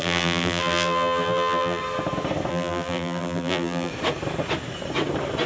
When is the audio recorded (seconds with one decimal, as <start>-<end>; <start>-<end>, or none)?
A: 1.8-2.5; 3.9-5.5